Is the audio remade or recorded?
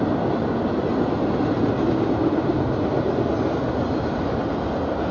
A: recorded